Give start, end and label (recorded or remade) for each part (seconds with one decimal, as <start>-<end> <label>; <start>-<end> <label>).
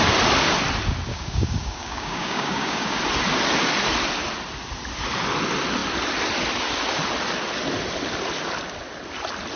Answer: 0.0-1.1 recorded; 1.1-3.0 remade; 3.0-9.6 recorded